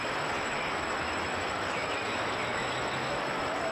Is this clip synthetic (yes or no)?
yes